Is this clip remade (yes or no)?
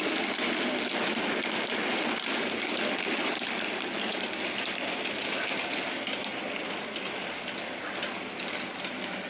no